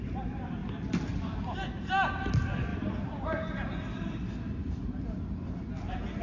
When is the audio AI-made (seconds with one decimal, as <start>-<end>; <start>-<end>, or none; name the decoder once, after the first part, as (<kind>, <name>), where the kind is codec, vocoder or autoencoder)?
none